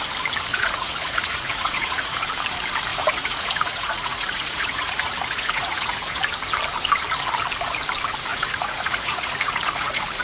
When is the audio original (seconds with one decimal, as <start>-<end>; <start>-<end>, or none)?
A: 0.0-0.5; 2.3-2.9; 6.2-8.3